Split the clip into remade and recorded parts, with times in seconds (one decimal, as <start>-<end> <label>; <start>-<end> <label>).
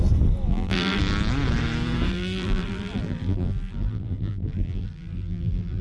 0.0-0.5 recorded; 0.5-1.0 remade; 1.0-2.1 recorded; 2.1-5.8 remade